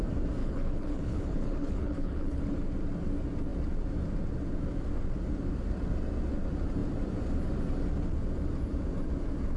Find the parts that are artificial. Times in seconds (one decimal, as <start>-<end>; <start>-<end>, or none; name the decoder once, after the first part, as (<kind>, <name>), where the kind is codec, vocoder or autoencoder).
0.4-2.4 (codec, HILCodec)